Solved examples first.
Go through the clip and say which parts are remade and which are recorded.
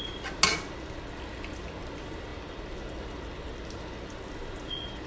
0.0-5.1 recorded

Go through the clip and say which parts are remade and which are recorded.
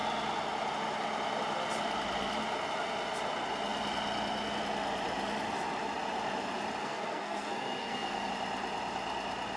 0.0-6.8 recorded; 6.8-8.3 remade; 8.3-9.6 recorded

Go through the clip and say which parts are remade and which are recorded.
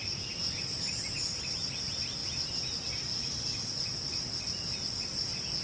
0.0-5.6 recorded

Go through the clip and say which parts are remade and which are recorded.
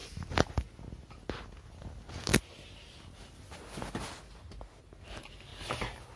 0.0-6.2 recorded